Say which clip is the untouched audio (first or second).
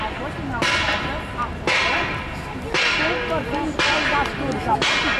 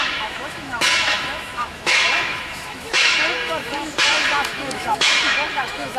first